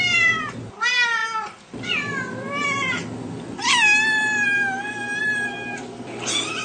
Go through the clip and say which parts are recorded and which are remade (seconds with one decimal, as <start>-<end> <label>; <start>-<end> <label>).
0.0-6.6 recorded